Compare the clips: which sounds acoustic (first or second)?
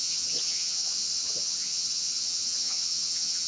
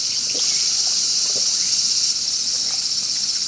second